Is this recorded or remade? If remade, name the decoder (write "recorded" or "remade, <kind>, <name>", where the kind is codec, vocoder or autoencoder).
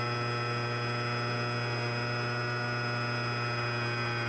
recorded